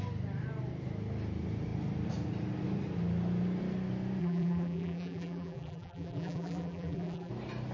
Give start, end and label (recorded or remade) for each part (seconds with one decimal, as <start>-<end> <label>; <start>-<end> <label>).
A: 0.0-4.2 recorded; 4.2-7.3 remade; 7.3-7.7 recorded